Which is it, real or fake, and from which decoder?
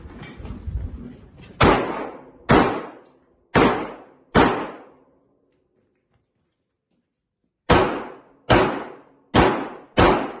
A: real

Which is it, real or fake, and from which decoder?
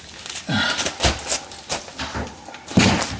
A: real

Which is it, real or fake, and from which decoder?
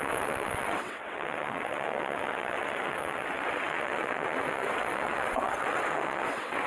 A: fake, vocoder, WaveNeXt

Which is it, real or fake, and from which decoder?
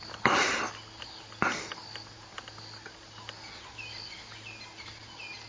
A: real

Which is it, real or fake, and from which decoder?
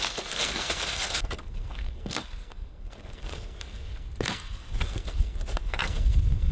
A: fake, codec, SNAC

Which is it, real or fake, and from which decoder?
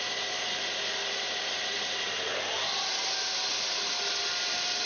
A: real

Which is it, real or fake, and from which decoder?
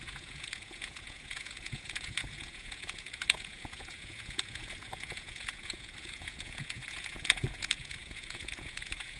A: fake, vocoder, Vocos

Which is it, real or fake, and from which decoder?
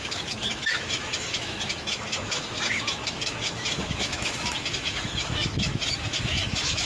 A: fake, autoencoder, DAC-VAE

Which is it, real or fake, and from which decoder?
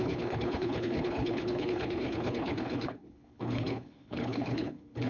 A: fake, codec, HILCodec